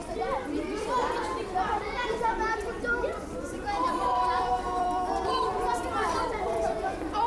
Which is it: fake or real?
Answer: fake